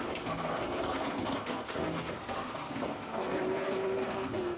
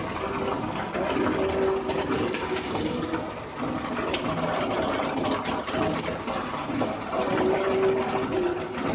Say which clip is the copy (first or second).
first